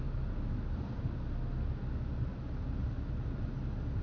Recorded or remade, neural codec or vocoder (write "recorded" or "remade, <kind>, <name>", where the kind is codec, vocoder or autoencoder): recorded